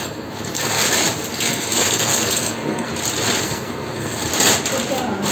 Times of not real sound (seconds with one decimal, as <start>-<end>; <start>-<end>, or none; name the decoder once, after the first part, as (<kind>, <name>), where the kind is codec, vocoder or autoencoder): 0.0-0.8 (codec, SNAC); 1.3-2.9; 3.4-4.3